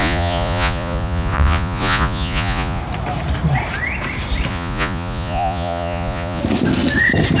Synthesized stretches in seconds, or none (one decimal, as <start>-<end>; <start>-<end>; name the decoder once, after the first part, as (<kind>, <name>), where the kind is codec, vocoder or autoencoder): 0.0-2.8 (vocoder, Vocos); 4.5-6.4